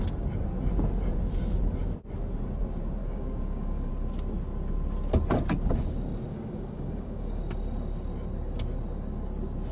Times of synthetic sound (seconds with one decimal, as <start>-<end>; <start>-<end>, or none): 3.0-3.9; 6.3-7.4